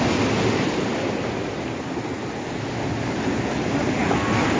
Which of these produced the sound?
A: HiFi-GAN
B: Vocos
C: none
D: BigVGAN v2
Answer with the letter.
C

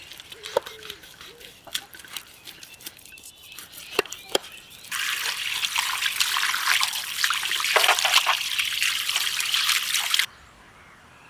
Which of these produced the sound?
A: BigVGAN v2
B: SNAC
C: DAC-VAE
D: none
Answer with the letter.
A